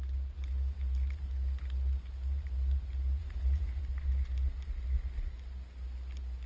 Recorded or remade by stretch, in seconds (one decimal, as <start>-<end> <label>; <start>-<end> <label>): 0.0-3.2 recorded; 3.2-3.8 remade; 3.8-6.5 recorded